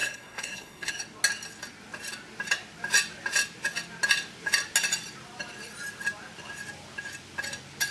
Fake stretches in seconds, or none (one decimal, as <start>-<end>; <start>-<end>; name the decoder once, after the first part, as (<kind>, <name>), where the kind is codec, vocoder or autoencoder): 0.0-0.9 (codec, SNAC)